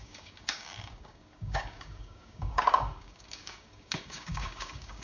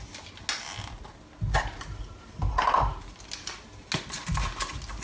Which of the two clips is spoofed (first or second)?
first